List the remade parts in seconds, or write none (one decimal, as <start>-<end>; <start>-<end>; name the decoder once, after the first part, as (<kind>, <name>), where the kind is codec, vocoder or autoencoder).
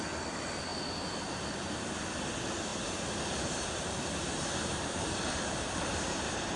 2.7-6.6 (vocoder, BigVGAN v2)